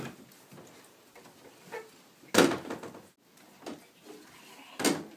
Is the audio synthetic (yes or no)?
no